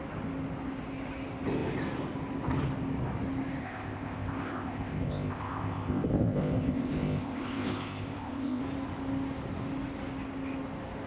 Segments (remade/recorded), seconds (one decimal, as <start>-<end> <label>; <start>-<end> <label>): 0.0-3.6 recorded; 3.6-8.6 remade; 8.6-11.1 recorded